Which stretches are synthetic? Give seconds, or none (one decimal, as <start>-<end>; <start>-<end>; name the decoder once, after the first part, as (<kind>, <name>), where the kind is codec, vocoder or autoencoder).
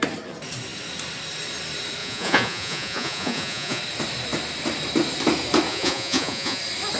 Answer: 2.0-3.8 (vocoder, Vocos); 5.7-6.6